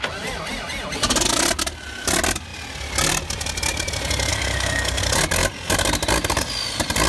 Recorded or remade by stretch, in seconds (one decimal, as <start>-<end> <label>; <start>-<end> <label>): 0.0-4.3 recorded; 4.3-5.0 remade; 5.0-7.1 recorded